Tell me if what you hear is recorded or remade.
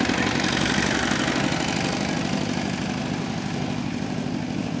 recorded